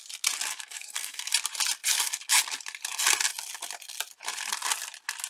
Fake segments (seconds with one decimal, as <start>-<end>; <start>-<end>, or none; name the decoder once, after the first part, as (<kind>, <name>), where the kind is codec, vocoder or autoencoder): 0.5-1.3 (codec, SNAC)